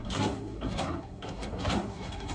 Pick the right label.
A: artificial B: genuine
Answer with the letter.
A